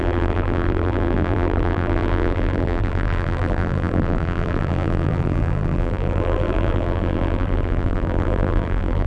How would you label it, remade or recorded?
remade